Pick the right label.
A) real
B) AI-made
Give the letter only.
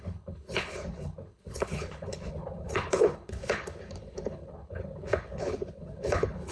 B